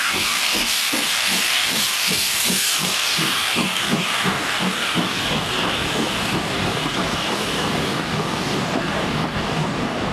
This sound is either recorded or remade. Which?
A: remade